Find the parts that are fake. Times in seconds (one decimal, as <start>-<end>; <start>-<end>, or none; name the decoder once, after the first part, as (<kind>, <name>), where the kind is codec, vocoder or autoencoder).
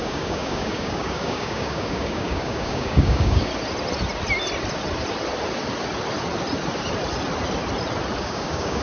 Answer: 0.0-3.5 (codec, DAC); 8.2-8.8